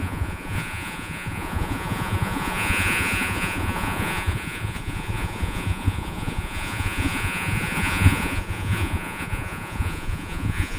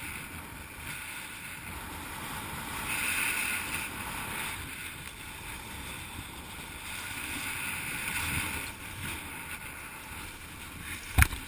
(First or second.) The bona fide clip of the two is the second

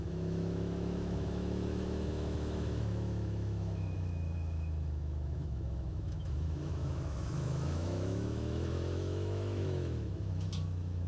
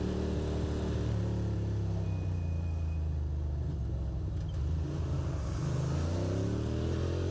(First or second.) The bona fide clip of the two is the second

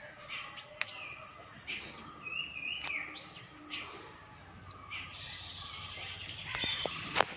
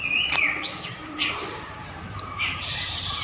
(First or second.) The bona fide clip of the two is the first